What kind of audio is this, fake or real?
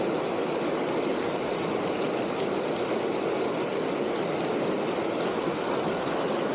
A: real